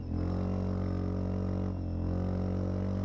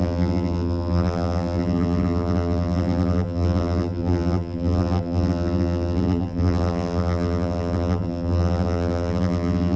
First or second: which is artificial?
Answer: second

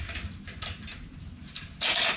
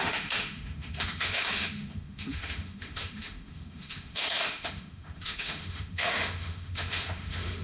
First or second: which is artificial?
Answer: second